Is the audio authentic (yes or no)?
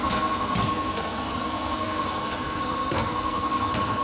no